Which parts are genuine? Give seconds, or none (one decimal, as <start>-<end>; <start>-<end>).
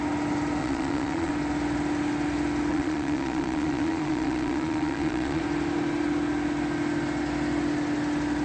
0.0-0.6; 1.3-2.7; 5.4-8.4